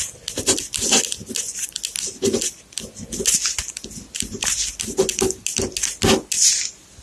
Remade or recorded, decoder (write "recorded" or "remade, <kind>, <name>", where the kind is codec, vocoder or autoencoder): recorded